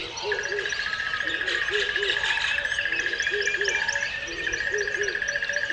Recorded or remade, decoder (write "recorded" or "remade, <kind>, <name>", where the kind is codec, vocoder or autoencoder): recorded